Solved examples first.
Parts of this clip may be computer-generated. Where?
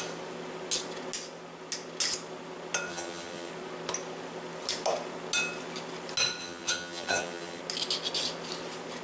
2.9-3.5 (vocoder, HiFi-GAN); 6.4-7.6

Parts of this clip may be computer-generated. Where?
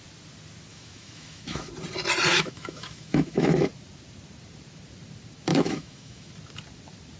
0.7-1.7 (autoencoder, DAC-VAE); 2.3-3.7; 5.5-6.3